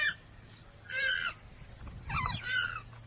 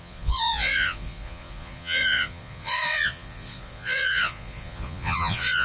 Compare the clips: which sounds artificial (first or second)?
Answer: second